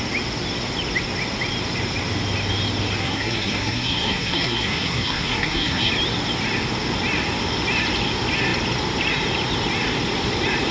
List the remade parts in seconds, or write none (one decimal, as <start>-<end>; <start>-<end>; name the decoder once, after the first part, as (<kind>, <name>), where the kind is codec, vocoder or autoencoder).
3.0-5.9 (codec, SNAC)